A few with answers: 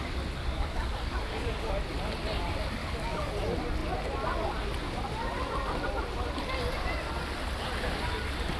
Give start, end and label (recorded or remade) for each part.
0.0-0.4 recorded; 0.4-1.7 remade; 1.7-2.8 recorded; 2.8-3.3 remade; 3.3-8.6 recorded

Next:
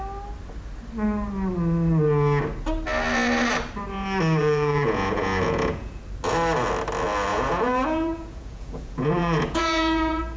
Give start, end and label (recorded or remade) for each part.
0.0-4.4 recorded; 4.4-6.0 remade; 6.0-7.3 recorded; 7.3-10.4 remade

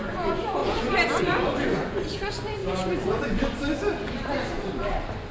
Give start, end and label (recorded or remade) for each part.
0.0-0.6 remade; 0.6-1.2 recorded; 1.2-2.6 remade; 2.6-5.3 recorded

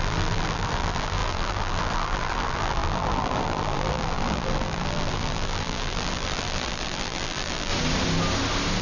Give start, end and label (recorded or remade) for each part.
0.0-7.7 remade; 7.7-8.8 recorded

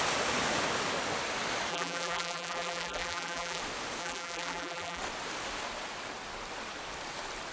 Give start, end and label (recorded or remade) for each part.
0.0-1.7 recorded; 1.7-3.6 remade; 3.6-4.0 recorded; 4.0-5.0 remade; 5.0-7.5 recorded

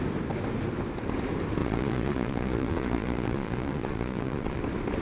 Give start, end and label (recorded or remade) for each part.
0.0-1.6 recorded; 1.6-4.6 remade; 4.6-5.0 recorded

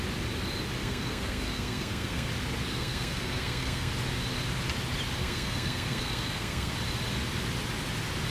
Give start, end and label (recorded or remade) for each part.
0.0-0.8 recorded; 0.8-2.3 remade; 2.3-2.7 recorded; 2.7-3.9 remade; 3.9-5.2 recorded; 5.2-6.7 remade; 6.7-8.3 recorded

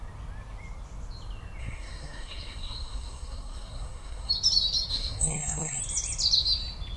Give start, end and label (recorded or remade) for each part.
0.0-1.6 recorded; 1.6-4.3 remade; 4.3-4.9 recorded; 4.9-5.8 remade; 5.8-7.0 recorded